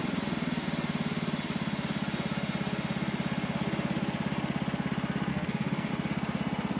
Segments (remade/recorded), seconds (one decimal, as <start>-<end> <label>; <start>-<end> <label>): 0.0-5.3 recorded; 5.3-5.9 remade; 5.9-6.8 recorded